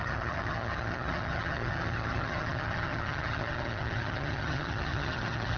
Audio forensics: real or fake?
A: fake